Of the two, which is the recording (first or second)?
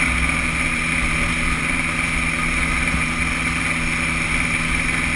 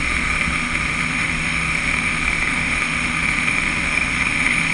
first